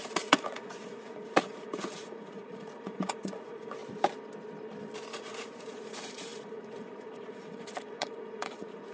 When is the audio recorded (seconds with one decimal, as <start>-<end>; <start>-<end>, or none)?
3.8-5.1